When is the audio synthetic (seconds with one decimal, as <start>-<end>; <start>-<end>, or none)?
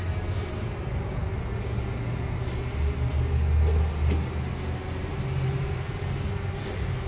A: none